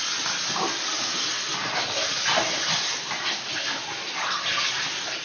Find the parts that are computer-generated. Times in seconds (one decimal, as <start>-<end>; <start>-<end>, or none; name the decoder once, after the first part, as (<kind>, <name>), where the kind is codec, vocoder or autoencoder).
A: none